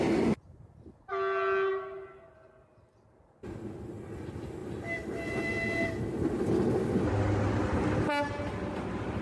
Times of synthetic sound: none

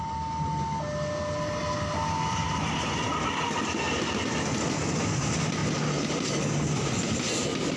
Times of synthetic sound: none